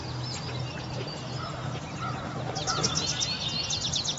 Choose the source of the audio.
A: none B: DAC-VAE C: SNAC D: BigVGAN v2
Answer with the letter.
A